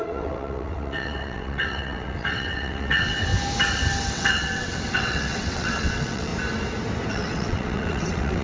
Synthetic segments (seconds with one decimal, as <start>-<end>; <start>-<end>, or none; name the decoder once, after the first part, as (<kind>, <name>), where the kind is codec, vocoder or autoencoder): 0.0-3.3 (vocoder, WaveNeXt); 4.1-6.3; 7.1-8.4